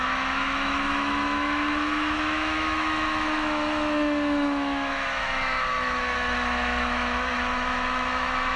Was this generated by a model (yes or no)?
yes